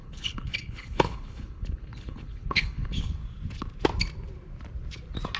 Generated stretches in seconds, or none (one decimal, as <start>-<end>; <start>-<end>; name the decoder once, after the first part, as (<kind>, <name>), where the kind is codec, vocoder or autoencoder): 0.0-3.2 (codec, HILCodec)